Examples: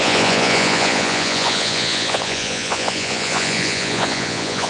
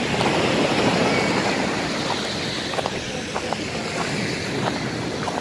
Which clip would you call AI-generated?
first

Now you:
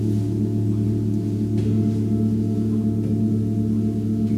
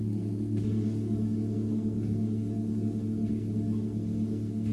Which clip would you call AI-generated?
second